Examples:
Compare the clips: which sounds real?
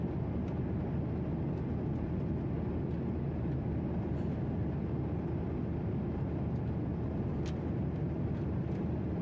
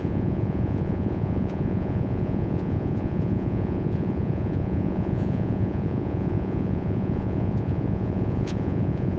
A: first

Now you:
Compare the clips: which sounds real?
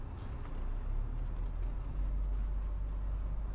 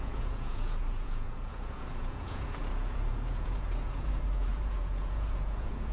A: first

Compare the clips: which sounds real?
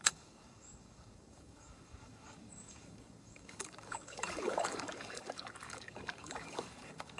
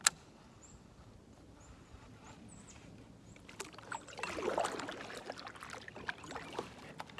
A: second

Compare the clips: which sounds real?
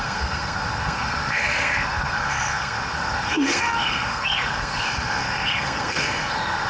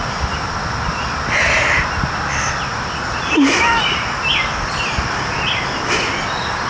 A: second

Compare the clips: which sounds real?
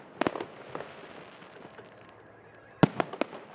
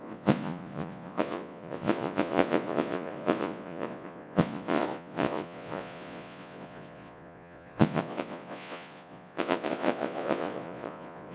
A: first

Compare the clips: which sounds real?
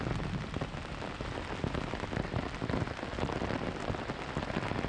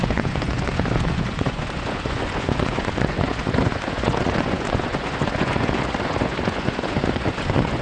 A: first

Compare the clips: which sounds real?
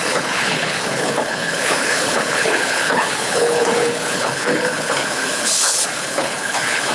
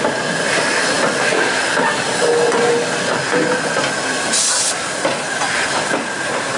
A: second